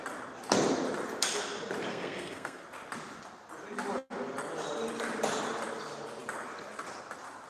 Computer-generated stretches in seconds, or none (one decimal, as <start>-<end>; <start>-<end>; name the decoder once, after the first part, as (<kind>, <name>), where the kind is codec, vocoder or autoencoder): 1.9-2.6 (codec, SNAC)